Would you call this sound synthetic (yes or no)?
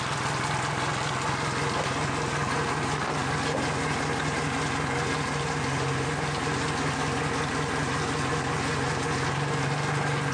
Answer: no